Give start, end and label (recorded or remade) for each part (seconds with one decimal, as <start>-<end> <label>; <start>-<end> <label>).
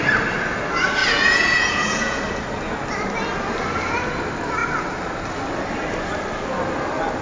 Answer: 0.0-1.0 recorded; 1.0-2.2 remade; 2.2-7.2 recorded